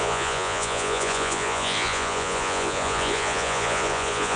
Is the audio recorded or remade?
remade